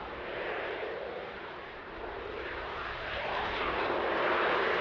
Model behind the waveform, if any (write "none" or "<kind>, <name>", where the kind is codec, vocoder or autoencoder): vocoder, BigVGAN v2